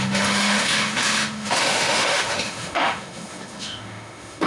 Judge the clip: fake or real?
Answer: fake